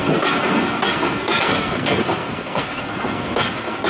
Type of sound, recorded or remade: remade